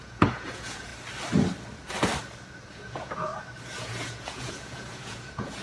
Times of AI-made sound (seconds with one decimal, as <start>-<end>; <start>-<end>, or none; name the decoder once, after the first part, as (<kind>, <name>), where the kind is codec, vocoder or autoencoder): 0.0-0.9 (vocoder, Vocos); 2.7-3.3; 3.8-5.6